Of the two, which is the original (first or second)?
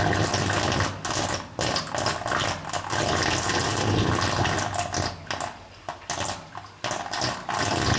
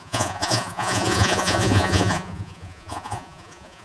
first